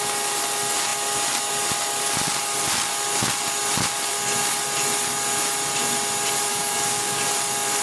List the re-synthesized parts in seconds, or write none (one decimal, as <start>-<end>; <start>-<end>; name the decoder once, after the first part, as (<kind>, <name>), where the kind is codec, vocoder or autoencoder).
6.5-7.2 (codec, DAC)